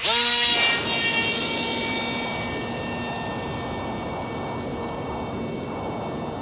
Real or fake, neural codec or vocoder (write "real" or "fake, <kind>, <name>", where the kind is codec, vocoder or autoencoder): real